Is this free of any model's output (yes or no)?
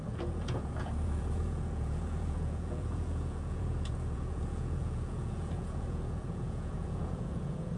no